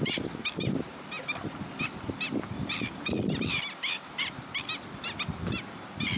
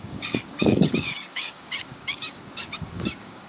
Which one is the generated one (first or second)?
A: second